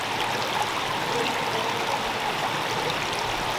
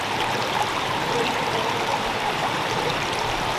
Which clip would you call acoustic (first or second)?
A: first